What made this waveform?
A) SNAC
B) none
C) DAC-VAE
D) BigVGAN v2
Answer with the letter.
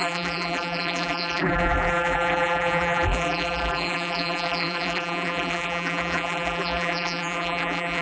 D